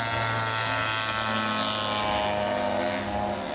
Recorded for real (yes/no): yes